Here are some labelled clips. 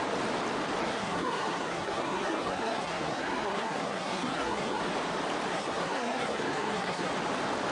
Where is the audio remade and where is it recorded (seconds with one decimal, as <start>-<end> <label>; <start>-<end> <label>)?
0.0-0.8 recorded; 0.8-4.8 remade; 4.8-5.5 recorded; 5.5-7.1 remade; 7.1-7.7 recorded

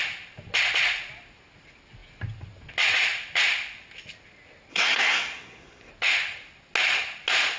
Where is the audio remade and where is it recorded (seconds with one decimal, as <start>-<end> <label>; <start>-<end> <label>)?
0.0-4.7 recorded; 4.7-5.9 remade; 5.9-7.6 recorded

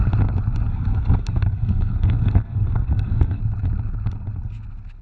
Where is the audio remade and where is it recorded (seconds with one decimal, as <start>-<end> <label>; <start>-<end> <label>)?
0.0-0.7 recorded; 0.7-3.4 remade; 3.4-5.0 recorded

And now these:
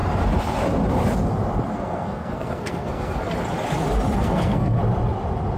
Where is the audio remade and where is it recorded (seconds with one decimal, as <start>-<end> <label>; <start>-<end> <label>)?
0.0-1.7 recorded; 1.7-3.2 remade; 3.2-4.2 recorded; 4.2-4.8 remade; 4.8-5.6 recorded

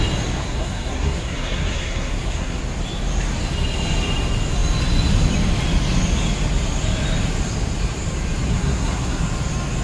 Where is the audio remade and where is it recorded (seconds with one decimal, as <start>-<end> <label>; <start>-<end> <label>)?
0.0-0.4 recorded; 0.4-2.6 remade; 2.6-8.5 recorded; 8.5-9.2 remade; 9.2-9.8 recorded

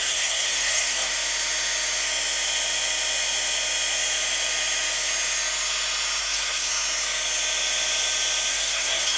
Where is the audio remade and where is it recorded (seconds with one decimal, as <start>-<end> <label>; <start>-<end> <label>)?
0.0-1.1 remade; 1.1-6.2 recorded; 6.2-6.7 remade; 6.7-8.5 recorded; 8.5-9.2 remade

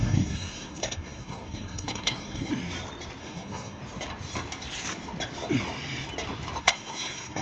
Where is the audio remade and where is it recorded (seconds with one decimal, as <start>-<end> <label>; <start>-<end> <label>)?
0.0-2.5 remade; 2.5-3.2 recorded; 3.2-3.8 remade; 3.8-6.6 recorded; 6.6-7.4 remade